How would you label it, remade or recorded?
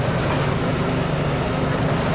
recorded